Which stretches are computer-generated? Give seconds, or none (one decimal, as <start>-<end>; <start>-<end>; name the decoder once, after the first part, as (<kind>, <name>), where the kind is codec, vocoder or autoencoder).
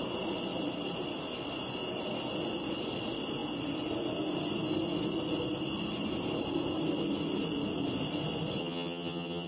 8.6-9.5 (vocoder, HiFi-GAN)